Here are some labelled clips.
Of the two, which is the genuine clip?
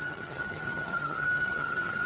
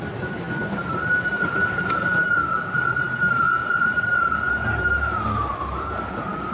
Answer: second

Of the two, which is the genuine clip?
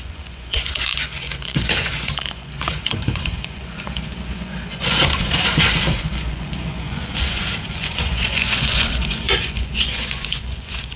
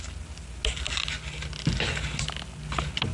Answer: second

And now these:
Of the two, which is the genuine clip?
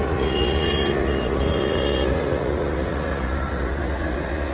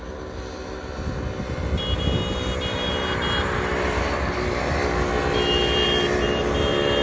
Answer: second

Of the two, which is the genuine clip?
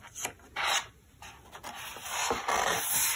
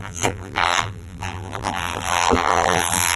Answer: first